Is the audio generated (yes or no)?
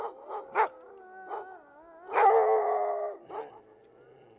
no